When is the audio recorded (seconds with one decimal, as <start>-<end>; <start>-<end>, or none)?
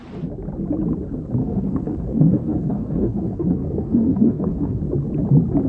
0.0-1.4; 4.8-5.7